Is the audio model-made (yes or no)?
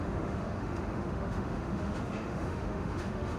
yes